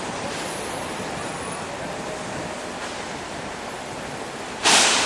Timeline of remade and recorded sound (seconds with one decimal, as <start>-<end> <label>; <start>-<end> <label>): 0.0-1.3 remade; 1.3-4.4 recorded; 4.4-5.1 remade